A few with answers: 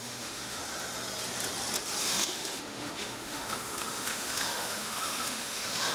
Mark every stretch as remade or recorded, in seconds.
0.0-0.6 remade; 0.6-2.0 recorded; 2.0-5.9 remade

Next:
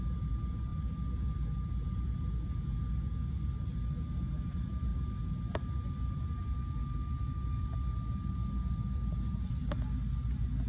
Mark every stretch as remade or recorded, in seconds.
0.0-10.7 recorded

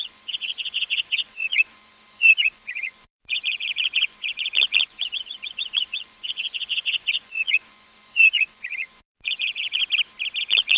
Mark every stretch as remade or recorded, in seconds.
0.0-9.8 remade; 9.8-10.4 recorded; 10.4-10.8 remade